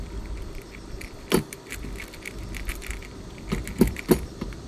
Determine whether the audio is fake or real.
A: real